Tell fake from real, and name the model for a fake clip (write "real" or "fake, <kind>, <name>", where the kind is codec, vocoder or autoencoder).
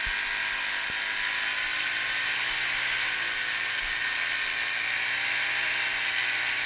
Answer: real